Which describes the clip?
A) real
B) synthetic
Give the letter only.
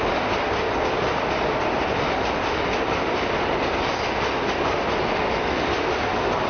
A